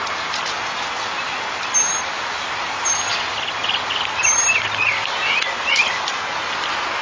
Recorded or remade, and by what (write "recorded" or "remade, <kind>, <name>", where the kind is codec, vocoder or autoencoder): recorded